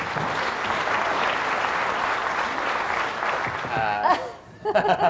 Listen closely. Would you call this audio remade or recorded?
recorded